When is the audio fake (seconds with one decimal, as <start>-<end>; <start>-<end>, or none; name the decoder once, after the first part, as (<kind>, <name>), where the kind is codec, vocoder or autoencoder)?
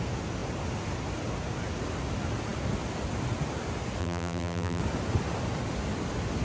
4.0-4.8 (vocoder, BigVGAN v2)